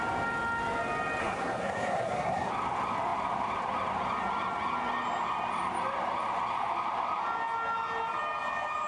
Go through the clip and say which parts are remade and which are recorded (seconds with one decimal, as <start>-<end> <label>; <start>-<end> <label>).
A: 0.0-1.2 recorded; 1.2-2.5 remade; 2.5-8.9 recorded